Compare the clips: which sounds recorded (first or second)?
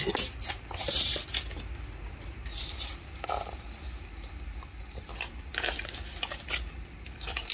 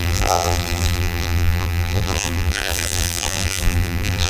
first